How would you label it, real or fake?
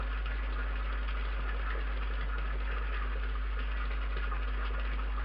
real